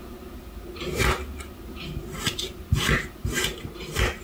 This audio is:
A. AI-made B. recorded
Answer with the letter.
B